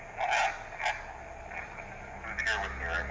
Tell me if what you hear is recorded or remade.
recorded